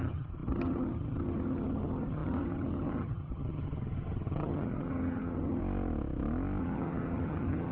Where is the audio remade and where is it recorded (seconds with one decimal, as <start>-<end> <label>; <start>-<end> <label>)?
0.0-5.6 remade; 5.6-6.6 recorded; 6.6-7.7 remade